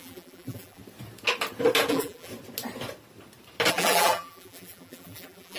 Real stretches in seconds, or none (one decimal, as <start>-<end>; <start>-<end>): 0.8-1.9; 2.3-3.7